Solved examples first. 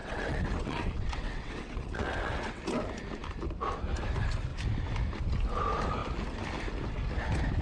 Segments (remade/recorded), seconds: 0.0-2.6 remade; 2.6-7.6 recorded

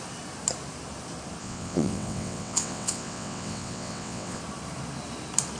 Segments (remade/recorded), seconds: 0.0-1.4 recorded; 1.4-4.4 remade; 4.4-5.6 recorded

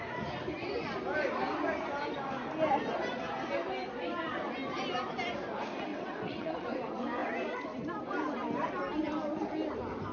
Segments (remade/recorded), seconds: 0.0-5.9 recorded; 5.9-6.8 remade; 6.8-10.1 recorded

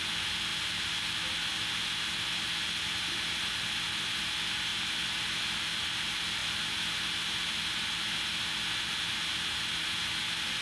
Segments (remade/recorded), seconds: 0.0-10.6 recorded

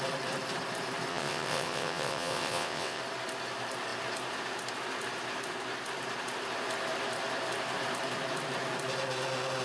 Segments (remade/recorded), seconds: 0.0-1.1 recorded; 1.1-3.0 remade; 3.0-9.6 recorded